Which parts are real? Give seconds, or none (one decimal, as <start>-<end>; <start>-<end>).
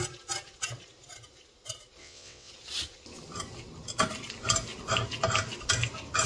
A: 0.0-2.0; 2.5-6.3